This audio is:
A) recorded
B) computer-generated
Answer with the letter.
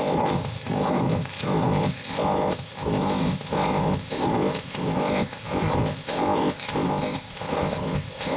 B